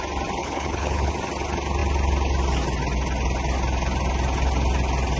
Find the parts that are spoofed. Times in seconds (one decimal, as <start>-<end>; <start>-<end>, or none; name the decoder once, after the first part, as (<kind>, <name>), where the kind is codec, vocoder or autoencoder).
0.4-1.1 (codec, HILCodec)